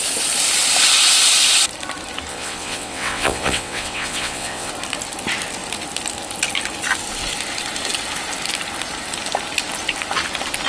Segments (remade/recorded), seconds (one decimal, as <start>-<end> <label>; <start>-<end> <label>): 0.0-2.3 recorded; 2.3-4.7 remade; 4.7-10.7 recorded